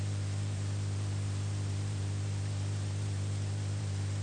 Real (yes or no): no